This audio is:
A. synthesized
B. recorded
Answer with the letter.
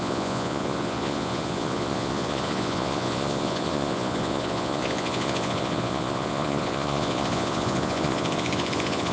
A